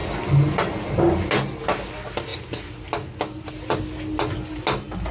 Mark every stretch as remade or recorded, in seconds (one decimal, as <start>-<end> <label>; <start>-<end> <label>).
0.0-5.1 recorded